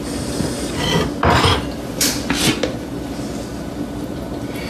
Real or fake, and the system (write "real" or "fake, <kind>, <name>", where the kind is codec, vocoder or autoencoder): real